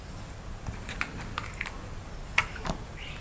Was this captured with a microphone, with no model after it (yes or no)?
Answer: yes